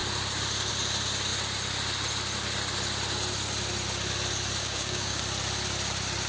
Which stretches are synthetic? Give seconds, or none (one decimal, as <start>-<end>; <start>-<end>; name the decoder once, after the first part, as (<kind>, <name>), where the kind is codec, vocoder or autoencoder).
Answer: 4.6-5.2 (codec, DAC)

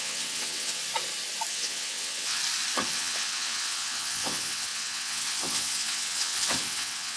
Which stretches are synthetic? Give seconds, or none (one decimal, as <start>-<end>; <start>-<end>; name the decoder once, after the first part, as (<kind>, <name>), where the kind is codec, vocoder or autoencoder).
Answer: 0.0-0.8 (vocoder, WaveNeXt); 1.5-2.4; 2.9-7.2

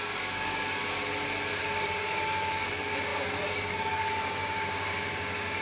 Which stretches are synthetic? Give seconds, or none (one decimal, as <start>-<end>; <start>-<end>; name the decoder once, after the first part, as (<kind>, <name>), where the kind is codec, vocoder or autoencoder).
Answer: 0.0-0.8 (codec, DAC); 1.6-5.6

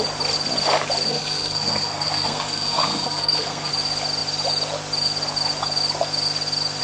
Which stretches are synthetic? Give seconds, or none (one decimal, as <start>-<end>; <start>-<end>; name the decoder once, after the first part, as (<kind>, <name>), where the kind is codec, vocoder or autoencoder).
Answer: 1.1-3.7 (codec, SNAC)

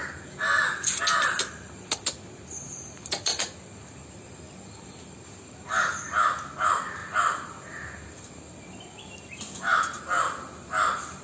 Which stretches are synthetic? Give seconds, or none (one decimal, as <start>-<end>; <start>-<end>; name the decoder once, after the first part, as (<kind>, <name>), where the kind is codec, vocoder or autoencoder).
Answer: none

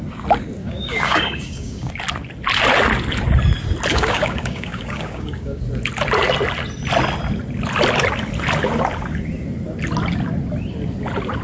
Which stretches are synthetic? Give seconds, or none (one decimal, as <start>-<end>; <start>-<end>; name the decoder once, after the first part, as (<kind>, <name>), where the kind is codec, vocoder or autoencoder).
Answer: 0.6-1.9 (codec, DAC); 3.9-5.6

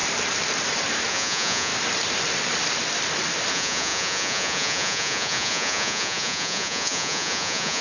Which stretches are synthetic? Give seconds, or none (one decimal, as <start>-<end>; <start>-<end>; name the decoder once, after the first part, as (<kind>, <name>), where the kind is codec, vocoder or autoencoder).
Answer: 1.1-1.7 (vocoder, Vocos); 3.5-7.8